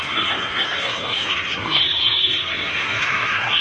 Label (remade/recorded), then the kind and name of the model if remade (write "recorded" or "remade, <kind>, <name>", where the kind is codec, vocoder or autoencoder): remade, codec, SNAC